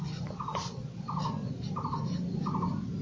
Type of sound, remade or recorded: recorded